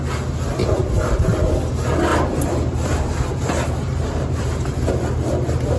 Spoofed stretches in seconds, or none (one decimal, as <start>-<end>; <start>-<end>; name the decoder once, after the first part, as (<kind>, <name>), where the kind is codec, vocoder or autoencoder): 0.6-1.2 (vocoder, BigVGAN v2); 2.1-4.9

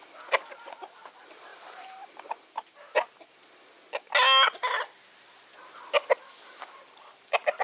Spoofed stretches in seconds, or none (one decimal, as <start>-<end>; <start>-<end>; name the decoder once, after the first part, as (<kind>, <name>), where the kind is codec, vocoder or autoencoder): none

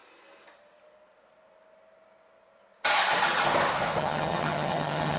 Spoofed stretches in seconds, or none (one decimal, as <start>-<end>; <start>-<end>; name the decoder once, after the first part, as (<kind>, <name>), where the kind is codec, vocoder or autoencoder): 4.0-5.2 (vocoder, HiFi-GAN)

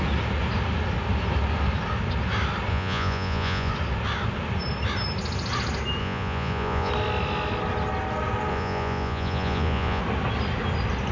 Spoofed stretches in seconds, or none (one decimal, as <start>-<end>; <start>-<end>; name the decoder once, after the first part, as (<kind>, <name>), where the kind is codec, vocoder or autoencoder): 2.7-3.7 (vocoder, Vocos); 6.0-6.9; 8.5-10.0

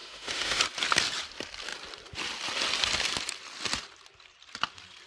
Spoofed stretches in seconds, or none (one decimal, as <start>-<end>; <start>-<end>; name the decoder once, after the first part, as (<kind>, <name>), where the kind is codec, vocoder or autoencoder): 0.0-0.6 (autoencoder, DAC-VAE)